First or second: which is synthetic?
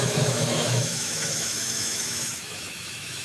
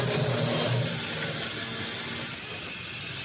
first